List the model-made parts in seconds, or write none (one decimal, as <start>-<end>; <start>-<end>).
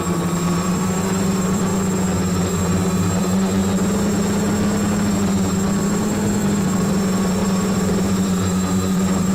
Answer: 0.0-1.7; 2.3-3.6; 5.8-9.3